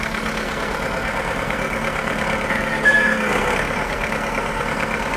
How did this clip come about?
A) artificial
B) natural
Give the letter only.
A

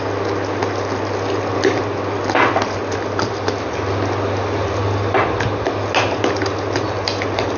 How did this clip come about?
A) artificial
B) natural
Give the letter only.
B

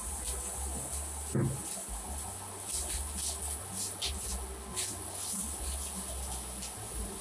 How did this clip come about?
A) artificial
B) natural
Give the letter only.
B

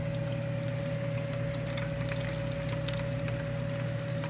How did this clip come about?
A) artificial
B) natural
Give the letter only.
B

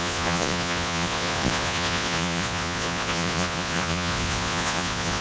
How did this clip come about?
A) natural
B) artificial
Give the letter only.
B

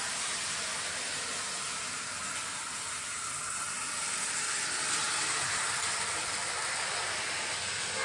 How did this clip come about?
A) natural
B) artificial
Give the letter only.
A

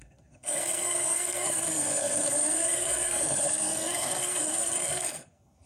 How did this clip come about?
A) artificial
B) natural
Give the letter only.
A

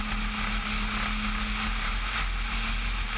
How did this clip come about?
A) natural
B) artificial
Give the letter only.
A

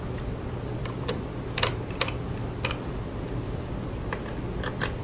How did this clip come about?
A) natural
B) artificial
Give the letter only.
A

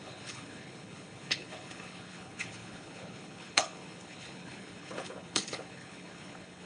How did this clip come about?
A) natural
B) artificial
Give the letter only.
B